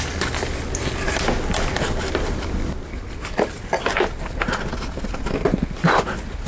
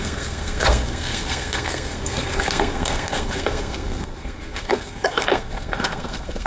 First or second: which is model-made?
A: second